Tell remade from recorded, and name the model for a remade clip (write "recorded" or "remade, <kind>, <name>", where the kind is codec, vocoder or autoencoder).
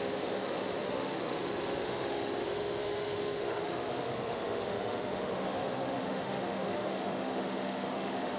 remade, autoencoder, DAC-VAE